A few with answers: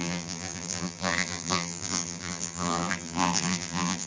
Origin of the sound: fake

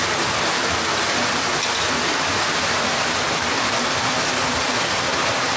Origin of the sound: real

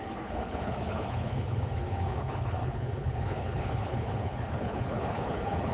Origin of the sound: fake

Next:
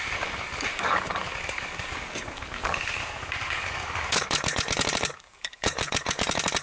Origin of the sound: fake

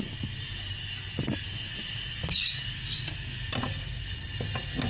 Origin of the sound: real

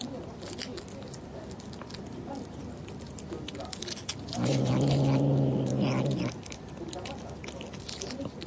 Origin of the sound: real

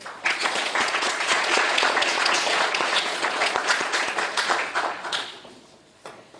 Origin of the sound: fake